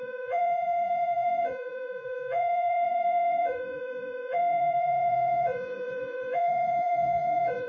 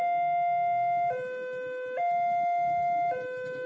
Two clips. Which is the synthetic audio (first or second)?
first